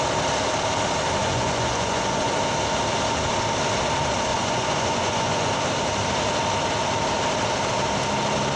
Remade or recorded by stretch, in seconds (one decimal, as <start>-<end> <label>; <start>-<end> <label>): 0.0-1.2 recorded; 1.2-2.4 remade; 2.4-4.3 recorded; 4.3-5.5 remade; 5.5-8.6 recorded